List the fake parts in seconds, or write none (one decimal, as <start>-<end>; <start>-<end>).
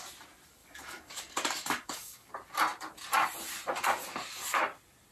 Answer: 0.6-2.3